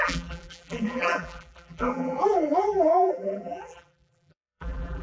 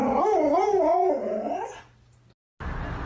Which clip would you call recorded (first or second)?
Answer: second